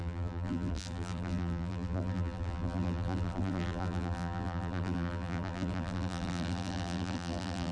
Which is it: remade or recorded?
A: remade